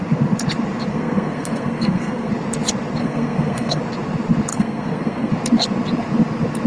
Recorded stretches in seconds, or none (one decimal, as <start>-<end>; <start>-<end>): 0.0-0.9; 2.3-3.0; 3.8-4.5; 5.3-6.7